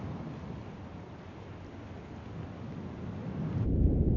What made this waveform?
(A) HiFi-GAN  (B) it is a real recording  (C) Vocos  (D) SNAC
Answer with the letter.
B